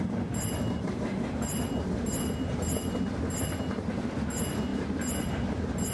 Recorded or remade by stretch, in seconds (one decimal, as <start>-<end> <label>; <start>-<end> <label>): 0.0-5.9 recorded